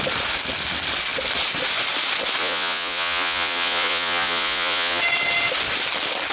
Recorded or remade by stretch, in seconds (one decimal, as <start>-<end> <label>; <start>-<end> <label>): 0.0-2.4 recorded; 2.4-5.0 remade; 5.0-6.3 recorded